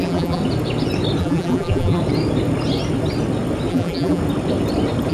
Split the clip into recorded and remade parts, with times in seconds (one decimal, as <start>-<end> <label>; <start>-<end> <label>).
0.0-0.4 remade; 0.4-1.2 recorded; 1.2-2.0 remade; 2.0-3.7 recorded; 3.7-4.2 remade; 4.2-5.1 recorded